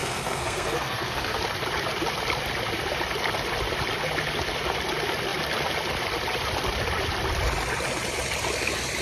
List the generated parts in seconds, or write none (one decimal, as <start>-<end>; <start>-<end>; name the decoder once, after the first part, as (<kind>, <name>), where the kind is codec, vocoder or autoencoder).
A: 0.0-1.4 (codec, SNAC)